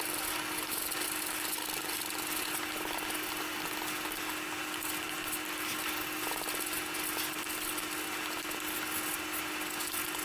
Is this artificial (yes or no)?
no